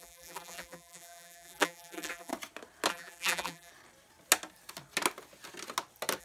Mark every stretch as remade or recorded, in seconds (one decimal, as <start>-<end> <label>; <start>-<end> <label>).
0.0-2.3 remade; 2.3-2.9 recorded; 2.9-3.7 remade; 3.7-6.2 recorded